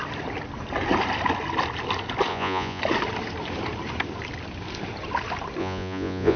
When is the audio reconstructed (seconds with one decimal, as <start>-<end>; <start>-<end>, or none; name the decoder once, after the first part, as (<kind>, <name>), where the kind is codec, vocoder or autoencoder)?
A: 2.3-2.8 (vocoder, Vocos); 5.6-6.4